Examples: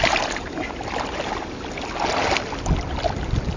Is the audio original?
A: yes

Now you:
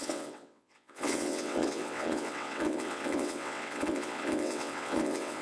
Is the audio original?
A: no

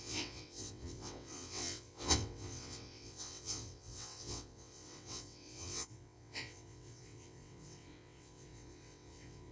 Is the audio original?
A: no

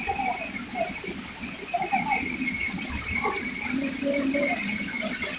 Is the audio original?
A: yes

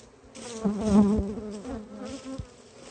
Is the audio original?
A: yes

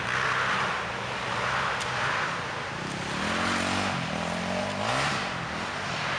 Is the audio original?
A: yes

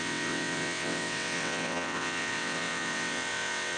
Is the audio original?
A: no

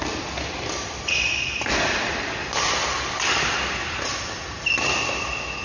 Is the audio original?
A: yes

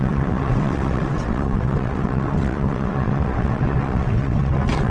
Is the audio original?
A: no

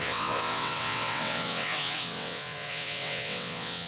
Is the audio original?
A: no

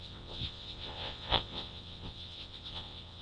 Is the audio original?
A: no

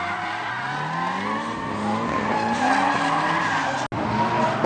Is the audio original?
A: yes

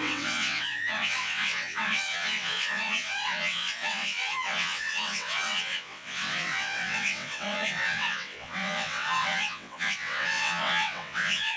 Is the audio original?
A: no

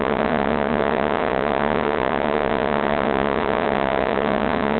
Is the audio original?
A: no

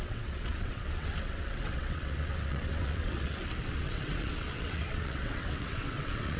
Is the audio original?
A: no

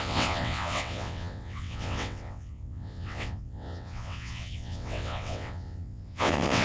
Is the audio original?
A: no